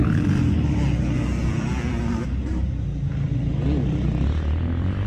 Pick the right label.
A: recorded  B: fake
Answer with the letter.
A